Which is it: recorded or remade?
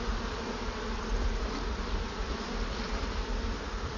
recorded